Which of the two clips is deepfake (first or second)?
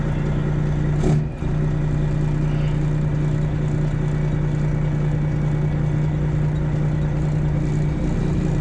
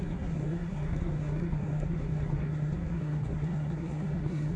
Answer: second